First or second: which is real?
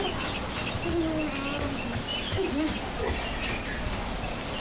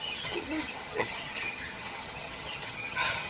first